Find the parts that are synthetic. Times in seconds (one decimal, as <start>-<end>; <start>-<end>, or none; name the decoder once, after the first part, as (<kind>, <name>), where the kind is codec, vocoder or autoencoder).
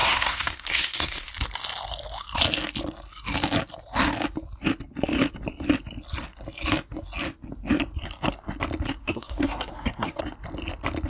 0.0-1.3 (codec, SNAC); 9.0-10.2